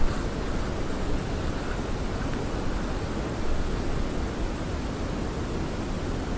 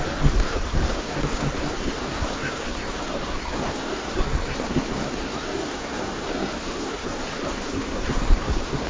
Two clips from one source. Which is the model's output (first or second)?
second